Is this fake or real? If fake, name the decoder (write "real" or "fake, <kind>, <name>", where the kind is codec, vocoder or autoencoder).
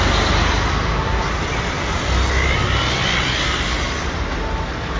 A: real